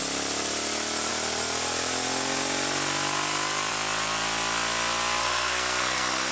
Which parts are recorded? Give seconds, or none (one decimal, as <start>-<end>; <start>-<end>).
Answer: 0.0-5.2